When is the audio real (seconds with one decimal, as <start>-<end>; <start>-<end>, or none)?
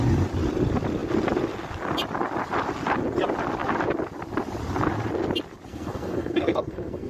0.0-5.7